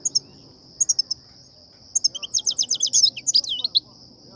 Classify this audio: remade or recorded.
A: recorded